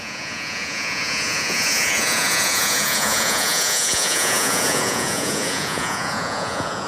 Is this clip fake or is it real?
fake